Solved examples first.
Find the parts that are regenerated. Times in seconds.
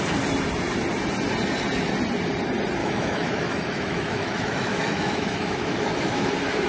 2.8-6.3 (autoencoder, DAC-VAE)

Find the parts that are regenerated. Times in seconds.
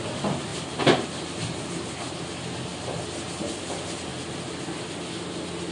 none